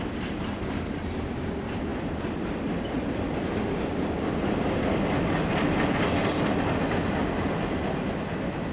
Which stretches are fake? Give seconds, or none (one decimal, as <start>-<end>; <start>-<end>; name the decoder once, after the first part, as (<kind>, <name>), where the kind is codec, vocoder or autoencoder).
none